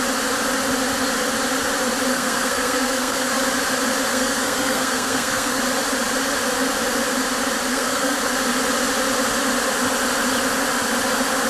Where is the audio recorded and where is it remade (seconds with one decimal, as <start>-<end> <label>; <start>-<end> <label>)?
0.0-2.1 recorded; 2.1-3.4 remade; 3.4-4.1 recorded; 4.1-5.6 remade; 5.6-7.7 recorded; 7.7-8.2 remade; 8.2-11.5 recorded